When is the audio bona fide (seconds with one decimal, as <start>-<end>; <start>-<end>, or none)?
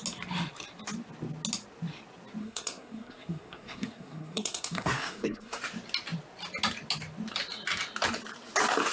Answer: 0.0-2.4; 5.6-8.9